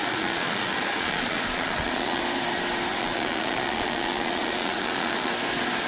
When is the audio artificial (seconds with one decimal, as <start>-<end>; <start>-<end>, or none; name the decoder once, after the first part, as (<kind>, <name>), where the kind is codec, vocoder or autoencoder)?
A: 0.0-2.2 (vocoder, Vocos); 2.9-5.3